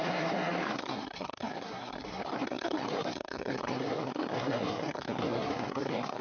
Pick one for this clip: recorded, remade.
remade